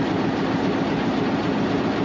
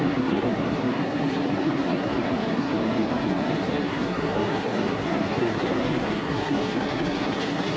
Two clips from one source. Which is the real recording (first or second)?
first